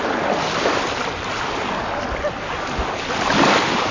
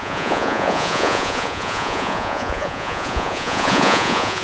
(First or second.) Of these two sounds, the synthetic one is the second